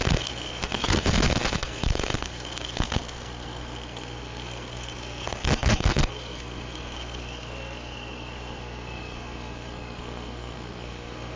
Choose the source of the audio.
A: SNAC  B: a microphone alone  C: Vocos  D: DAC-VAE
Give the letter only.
A